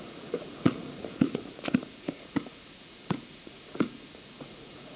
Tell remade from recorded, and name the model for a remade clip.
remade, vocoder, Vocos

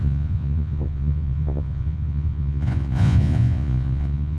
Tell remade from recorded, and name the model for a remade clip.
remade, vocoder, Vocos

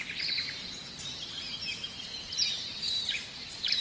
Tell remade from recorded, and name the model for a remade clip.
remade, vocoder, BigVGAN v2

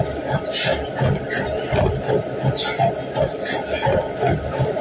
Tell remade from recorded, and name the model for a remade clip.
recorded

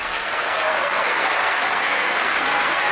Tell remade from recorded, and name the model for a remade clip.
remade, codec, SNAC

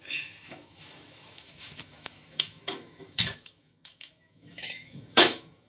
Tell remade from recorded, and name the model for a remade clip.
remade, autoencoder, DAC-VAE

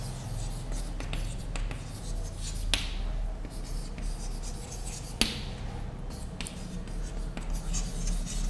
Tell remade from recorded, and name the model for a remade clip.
recorded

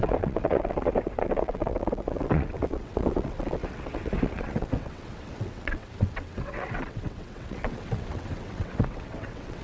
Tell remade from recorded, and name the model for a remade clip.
remade, vocoder, WaveNeXt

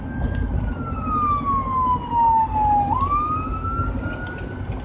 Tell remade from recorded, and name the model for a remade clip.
recorded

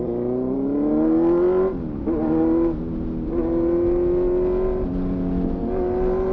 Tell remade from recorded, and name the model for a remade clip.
recorded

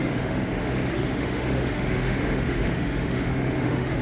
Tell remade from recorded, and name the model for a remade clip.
remade, autoencoder, DAC-VAE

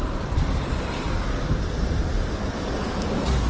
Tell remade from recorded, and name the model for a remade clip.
recorded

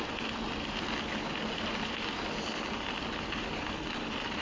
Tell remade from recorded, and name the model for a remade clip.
recorded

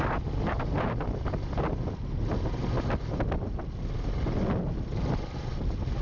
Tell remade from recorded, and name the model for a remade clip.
recorded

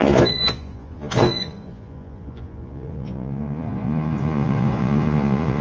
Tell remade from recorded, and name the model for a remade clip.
remade, vocoder, Vocos